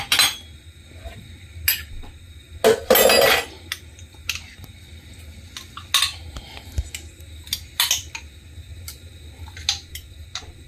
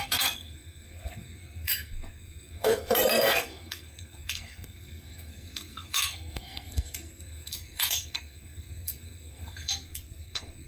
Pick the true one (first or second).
first